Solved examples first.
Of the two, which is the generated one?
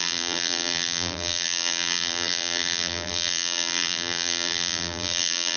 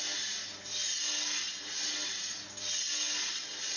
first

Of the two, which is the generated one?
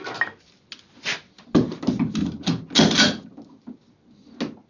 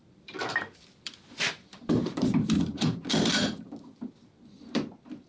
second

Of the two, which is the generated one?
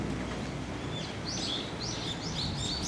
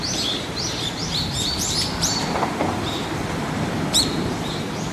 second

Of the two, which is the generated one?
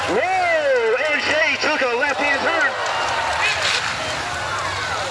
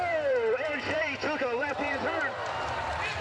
second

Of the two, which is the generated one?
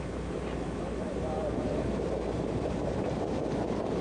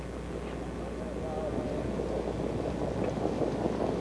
first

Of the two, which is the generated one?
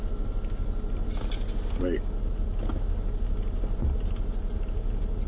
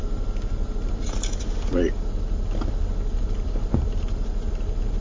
second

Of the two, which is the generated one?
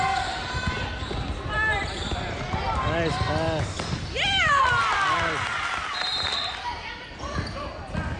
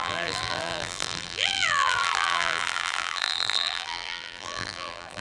second